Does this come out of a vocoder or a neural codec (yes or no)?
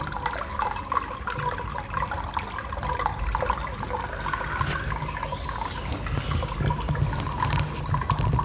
no